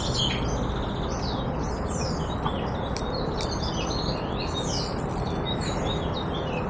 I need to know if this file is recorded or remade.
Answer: recorded